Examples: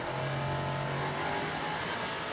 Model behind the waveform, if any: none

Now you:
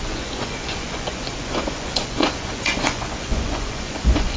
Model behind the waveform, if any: vocoder, Vocos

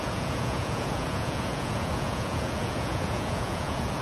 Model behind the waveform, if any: vocoder, Vocos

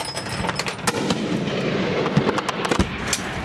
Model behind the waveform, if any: none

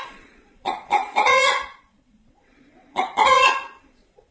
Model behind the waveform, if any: vocoder, Vocos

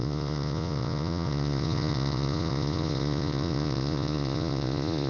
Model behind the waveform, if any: vocoder, Vocos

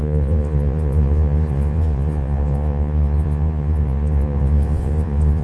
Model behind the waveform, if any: vocoder, Vocos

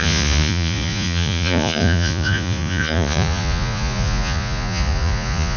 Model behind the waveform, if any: vocoder, Vocos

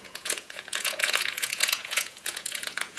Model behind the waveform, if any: vocoder, Vocos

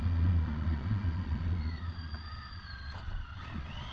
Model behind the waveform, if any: vocoder, Vocos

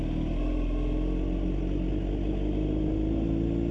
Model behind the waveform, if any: none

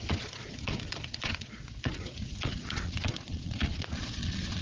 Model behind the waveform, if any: vocoder, Vocos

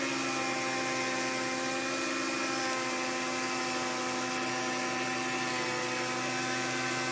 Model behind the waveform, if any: none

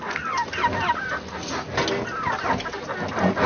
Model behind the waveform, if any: none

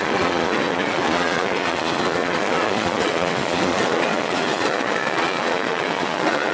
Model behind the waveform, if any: vocoder, Vocos